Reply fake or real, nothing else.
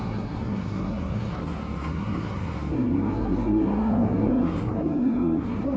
fake